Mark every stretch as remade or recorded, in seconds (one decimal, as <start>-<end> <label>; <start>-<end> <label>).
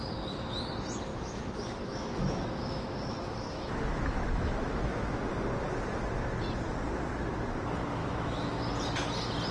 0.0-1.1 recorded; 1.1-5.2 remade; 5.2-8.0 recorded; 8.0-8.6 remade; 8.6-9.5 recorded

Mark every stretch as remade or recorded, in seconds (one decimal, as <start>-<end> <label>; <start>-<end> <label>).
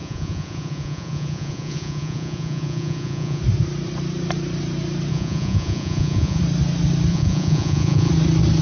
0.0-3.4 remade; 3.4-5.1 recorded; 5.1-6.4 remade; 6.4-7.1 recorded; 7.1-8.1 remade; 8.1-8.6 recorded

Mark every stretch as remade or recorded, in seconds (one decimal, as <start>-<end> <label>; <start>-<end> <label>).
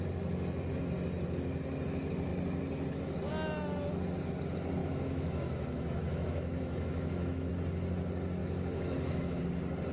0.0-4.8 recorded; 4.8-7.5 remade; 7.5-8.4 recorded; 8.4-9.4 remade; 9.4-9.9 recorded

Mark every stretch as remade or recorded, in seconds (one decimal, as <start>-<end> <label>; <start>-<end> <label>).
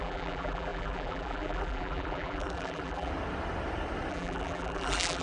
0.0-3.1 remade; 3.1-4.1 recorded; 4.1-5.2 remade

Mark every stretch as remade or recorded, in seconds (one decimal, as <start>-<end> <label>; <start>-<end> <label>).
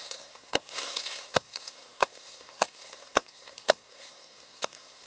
0.0-5.1 remade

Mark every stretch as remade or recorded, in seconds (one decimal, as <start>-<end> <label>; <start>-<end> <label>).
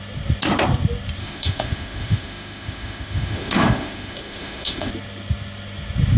0.0-1.2 recorded; 1.2-4.9 remade; 4.9-6.2 recorded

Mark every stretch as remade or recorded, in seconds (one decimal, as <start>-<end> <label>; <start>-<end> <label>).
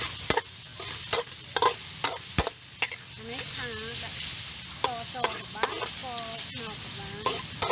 0.0-7.7 recorded